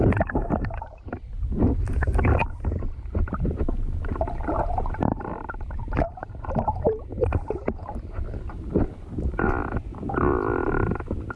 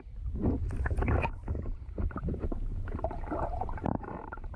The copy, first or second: second